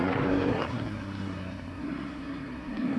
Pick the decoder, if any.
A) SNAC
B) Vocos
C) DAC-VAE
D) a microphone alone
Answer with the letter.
A